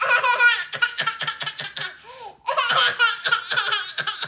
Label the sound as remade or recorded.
recorded